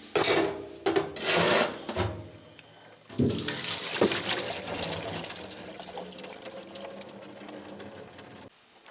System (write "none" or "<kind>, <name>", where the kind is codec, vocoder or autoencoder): none